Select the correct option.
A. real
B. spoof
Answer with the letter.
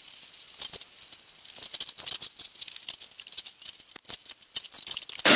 A